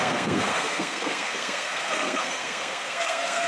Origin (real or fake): fake